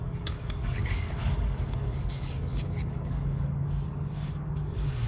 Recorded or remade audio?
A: remade